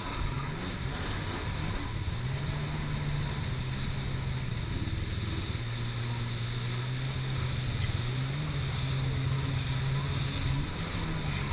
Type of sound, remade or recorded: recorded